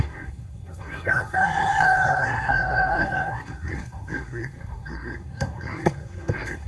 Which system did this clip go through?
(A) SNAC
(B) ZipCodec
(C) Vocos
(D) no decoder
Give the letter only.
A